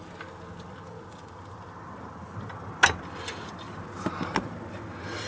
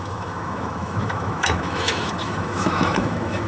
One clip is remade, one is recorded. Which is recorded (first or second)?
first